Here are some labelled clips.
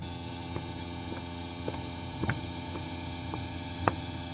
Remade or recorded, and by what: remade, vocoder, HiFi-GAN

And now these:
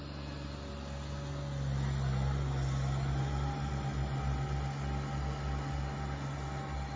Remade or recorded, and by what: recorded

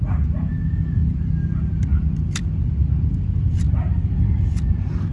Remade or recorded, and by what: recorded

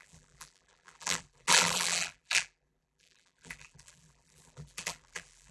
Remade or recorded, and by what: remade, vocoder, BigVGAN v2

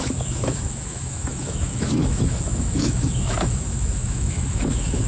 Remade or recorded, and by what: remade, autoencoder, DAC-VAE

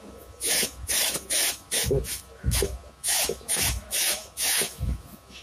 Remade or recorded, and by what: remade, autoencoder, DAC-VAE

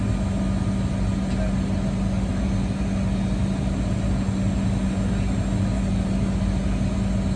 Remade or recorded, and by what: recorded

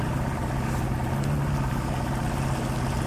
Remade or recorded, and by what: recorded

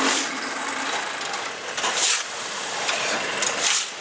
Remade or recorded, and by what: remade, vocoder, BigVGAN v2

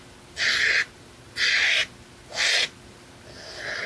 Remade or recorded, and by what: recorded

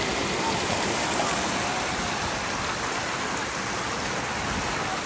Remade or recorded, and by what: recorded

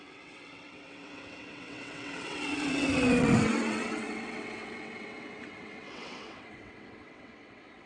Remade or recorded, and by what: remade, vocoder, WaveNeXt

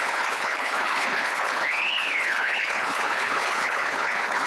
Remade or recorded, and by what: remade, codec, HILCodec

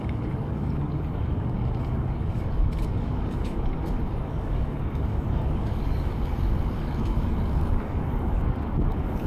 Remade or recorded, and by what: remade, codec, DAC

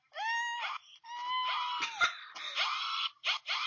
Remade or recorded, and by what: recorded